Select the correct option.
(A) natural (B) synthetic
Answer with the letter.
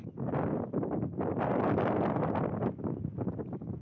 A